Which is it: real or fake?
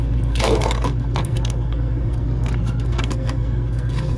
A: fake